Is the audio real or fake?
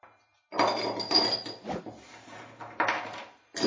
real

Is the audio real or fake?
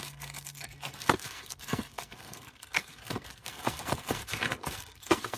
fake